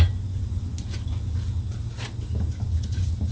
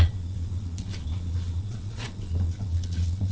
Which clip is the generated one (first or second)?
second